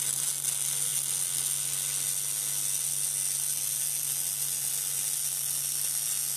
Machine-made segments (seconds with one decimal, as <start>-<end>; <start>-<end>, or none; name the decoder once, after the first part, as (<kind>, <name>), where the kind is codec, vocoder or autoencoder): none